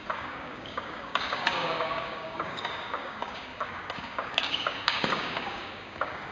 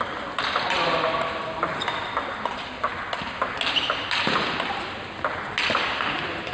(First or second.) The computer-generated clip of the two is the first